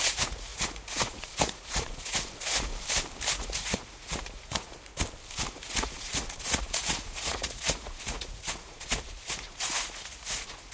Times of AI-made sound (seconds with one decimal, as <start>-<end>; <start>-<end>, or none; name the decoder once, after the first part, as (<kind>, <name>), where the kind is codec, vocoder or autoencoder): 0.0-2.7 (vocoder, Vocos); 3.3-4.9; 5.5-10.7